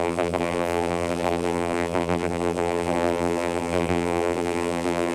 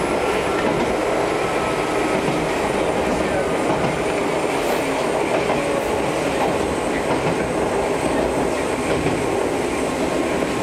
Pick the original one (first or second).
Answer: second